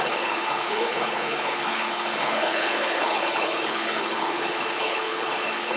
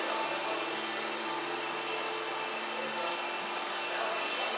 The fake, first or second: first